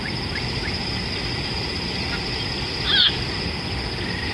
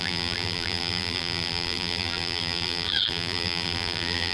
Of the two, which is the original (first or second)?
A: first